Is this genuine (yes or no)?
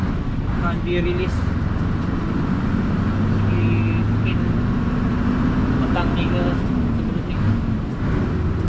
yes